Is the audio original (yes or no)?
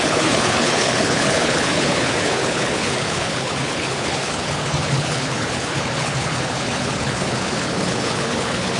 no